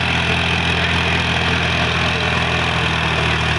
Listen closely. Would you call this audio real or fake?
real